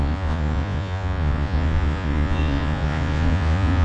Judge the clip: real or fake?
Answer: fake